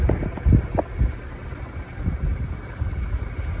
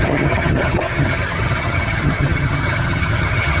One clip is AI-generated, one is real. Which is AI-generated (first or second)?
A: second